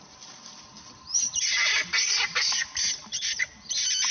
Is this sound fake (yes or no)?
no